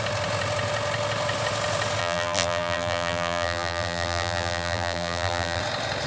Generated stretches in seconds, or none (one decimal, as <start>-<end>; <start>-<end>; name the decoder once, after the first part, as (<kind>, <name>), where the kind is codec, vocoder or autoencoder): 2.0-5.6 (vocoder, BigVGAN v2)